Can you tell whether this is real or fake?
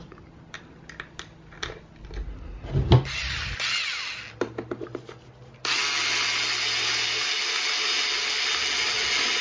real